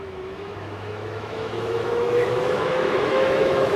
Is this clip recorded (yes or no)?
no